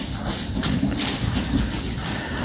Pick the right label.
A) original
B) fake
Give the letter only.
A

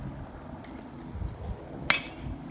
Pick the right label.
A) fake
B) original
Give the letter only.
B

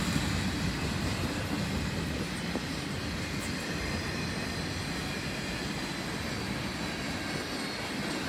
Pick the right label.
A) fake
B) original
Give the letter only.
B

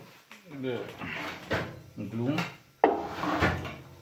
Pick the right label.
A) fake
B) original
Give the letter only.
B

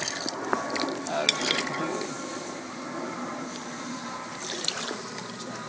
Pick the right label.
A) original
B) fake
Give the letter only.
A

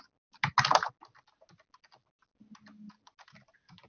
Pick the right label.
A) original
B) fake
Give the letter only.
A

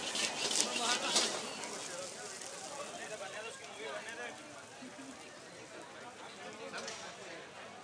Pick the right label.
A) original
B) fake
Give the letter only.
A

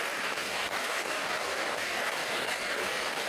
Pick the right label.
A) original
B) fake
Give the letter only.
B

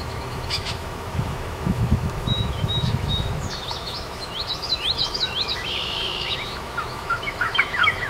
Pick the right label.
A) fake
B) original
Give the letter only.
A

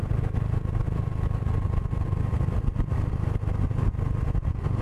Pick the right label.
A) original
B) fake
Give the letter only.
A